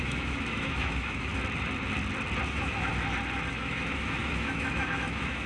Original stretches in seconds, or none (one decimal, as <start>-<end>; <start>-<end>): 1.3-2.5; 2.9-3.5